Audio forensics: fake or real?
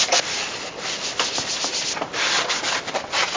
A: fake